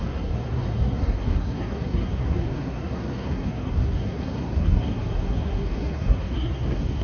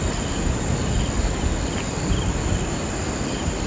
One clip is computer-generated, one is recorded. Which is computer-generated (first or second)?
first